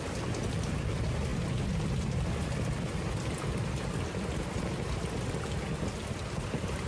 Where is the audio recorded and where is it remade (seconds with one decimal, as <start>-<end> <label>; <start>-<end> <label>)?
0.0-6.9 recorded